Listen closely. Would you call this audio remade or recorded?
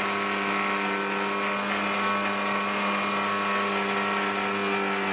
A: recorded